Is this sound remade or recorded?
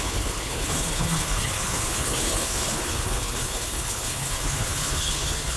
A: remade